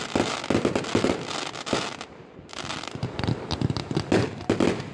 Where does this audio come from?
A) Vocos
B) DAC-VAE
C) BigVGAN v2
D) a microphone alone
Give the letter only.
D